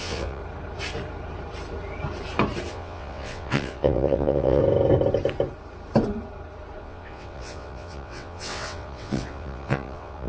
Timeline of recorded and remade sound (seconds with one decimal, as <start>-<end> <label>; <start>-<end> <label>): 0.0-0.4 remade; 0.4-2.7 recorded; 2.7-4.6 remade; 4.6-6.8 recorded; 6.8-10.3 remade